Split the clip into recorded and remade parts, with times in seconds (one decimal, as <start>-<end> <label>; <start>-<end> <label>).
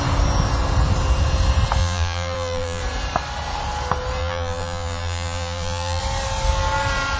0.0-1.8 recorded; 1.8-2.8 remade; 2.8-4.2 recorded; 4.2-6.0 remade; 6.0-7.2 recorded